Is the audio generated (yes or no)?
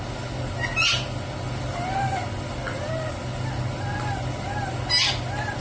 no